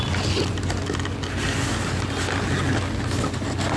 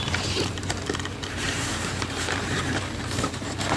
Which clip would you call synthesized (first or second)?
second